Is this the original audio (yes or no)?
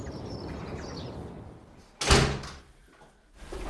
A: yes